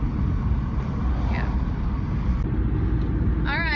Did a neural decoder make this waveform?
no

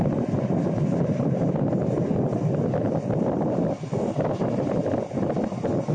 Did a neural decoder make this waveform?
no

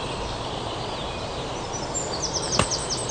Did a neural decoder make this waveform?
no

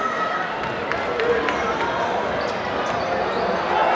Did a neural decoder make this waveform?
no